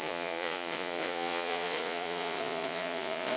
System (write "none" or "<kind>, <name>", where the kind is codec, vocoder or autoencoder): vocoder, Vocos